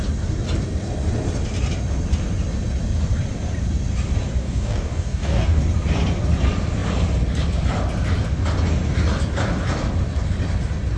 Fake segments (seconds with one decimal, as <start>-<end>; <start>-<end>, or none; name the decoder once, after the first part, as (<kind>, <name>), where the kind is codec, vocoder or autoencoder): 4.4-5.6 (codec, DAC)